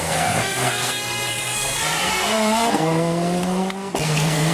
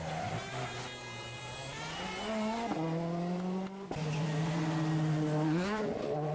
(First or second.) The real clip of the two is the second